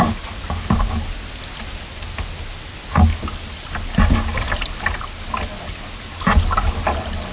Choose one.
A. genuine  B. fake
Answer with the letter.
A